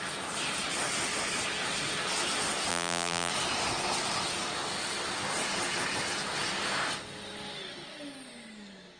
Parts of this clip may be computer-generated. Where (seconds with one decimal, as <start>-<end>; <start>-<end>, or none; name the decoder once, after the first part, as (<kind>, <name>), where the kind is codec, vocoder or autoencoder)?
2.7-3.3 (vocoder, BigVGAN v2)